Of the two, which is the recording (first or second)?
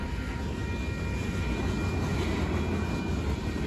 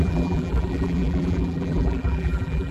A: first